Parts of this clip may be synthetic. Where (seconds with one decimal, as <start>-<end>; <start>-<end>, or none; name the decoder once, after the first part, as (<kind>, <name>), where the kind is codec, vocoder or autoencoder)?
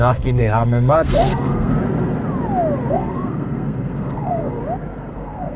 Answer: 0.0-1.7 (codec, SNAC); 2.9-4.6; 5.1-5.6